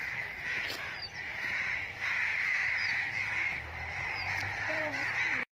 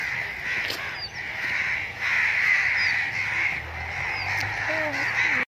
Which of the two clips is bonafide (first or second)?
second